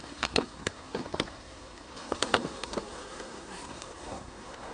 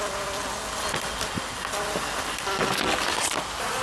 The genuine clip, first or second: second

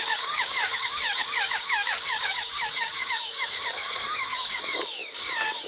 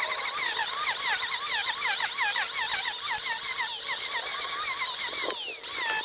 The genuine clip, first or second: second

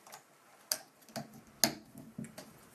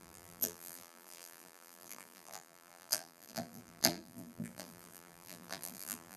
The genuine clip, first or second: first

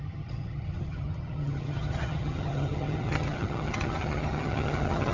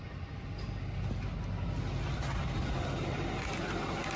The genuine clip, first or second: second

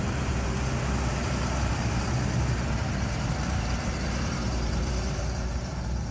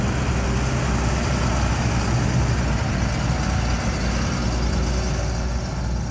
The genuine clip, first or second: second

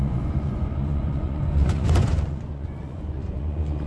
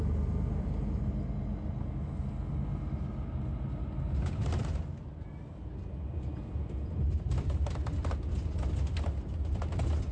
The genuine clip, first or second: second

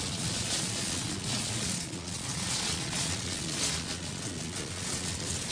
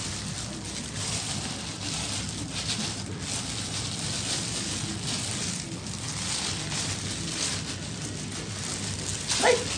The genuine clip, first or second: second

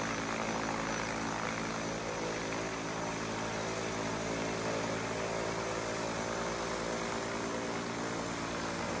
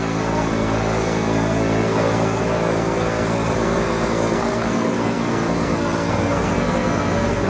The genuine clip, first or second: first